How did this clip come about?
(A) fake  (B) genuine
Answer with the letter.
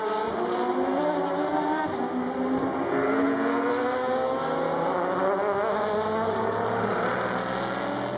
B